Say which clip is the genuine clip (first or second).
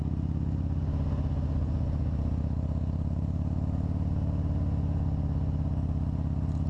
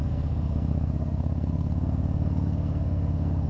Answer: first